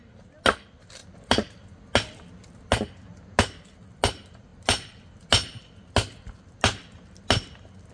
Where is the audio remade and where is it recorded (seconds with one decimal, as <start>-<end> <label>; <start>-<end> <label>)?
0.0-7.9 recorded